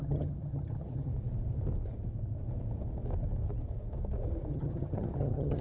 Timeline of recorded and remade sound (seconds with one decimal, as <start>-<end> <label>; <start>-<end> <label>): 0.0-1.1 remade; 1.1-4.5 recorded; 4.5-5.6 remade